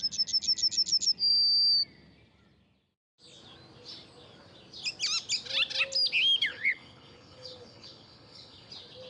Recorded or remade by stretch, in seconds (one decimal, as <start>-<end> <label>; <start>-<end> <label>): 0.0-6.5 recorded; 6.5-8.7 remade; 8.7-9.1 recorded